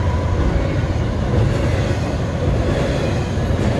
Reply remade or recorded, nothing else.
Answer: recorded